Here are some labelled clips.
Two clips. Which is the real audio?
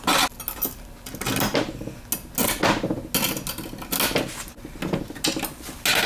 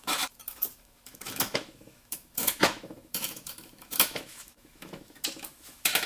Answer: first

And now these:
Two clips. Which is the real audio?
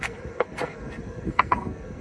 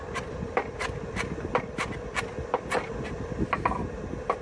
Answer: second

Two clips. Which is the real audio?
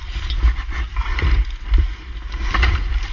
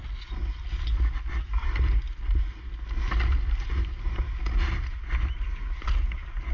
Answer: second